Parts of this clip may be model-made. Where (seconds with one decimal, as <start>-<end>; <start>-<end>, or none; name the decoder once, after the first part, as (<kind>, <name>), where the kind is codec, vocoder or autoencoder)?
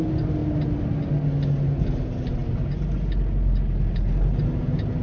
none